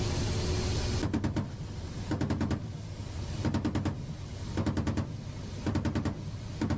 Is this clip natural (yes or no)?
yes